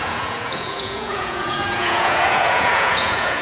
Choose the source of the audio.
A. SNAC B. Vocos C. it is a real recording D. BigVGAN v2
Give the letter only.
B